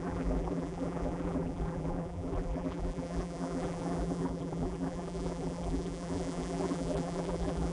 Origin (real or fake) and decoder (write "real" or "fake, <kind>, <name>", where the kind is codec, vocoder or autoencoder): fake, vocoder, BigVGAN v2